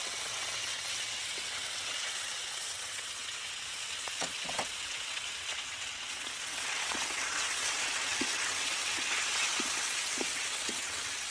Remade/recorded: remade